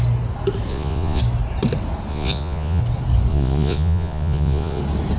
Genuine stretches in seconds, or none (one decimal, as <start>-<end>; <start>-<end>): 0.0-0.7; 1.2-2.1; 2.8-3.3; 4.8-5.2